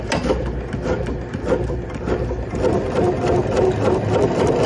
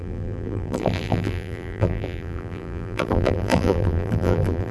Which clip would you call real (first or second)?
first